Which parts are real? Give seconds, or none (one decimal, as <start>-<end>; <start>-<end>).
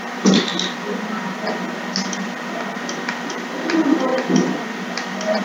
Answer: 0.5-3.2; 4.1-5.4